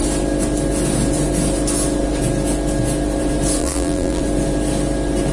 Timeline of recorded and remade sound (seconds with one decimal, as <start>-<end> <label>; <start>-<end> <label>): 0.0-3.6 recorded; 3.6-4.2 remade; 4.2-5.3 recorded